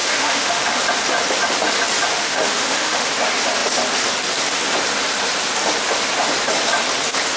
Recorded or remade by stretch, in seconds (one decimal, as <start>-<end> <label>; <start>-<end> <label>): 0.0-0.8 remade; 0.8-2.1 recorded; 2.1-3.1 remade; 3.1-7.4 recorded